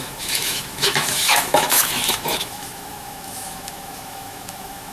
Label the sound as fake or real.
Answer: fake